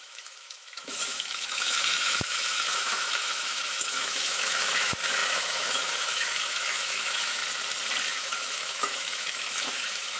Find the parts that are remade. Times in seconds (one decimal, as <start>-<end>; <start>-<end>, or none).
0.0-7.4; 8.1-10.2